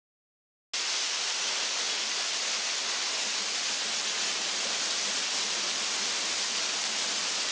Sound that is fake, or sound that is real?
real